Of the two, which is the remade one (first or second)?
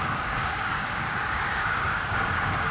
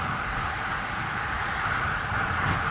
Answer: first